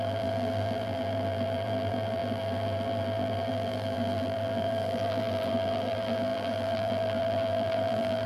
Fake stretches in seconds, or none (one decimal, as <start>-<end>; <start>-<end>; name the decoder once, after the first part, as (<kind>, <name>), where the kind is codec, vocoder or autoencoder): 0.0-8.3 (vocoder, BigVGAN v2)